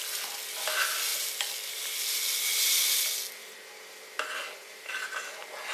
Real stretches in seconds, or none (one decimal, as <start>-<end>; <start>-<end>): 0.0-4.6; 5.3-5.7